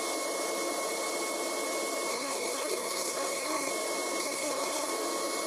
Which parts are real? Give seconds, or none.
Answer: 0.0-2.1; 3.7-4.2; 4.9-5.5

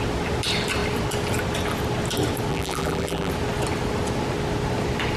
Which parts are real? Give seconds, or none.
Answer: 0.0-2.5; 3.3-5.2

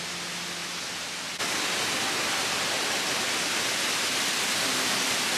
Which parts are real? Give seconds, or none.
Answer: 0.0-5.4

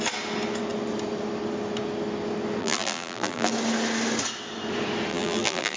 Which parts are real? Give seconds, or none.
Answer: 0.0-2.6; 3.5-5.1

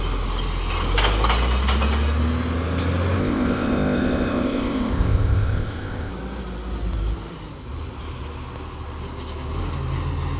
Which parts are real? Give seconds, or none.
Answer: 0.0-3.2; 6.1-10.4

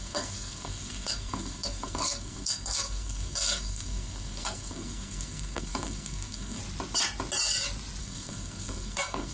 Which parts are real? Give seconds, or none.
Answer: 6.6-8.0

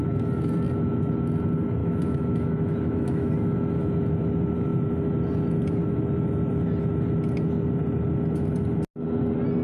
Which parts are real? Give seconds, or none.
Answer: 0.0-1.8; 3.3-9.6